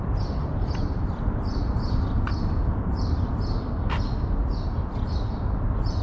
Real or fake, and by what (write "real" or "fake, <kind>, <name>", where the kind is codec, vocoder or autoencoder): fake, vocoder, BigVGAN v2